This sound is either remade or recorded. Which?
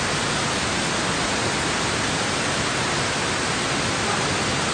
recorded